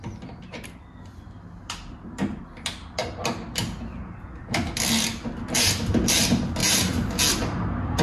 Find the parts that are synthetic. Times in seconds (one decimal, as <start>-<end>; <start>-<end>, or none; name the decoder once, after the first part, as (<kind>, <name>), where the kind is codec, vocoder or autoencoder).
none